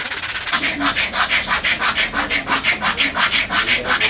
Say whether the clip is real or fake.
real